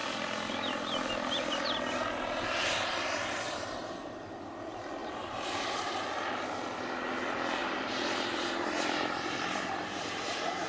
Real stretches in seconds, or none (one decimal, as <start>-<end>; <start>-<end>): 0.0-5.0; 5.9-7.6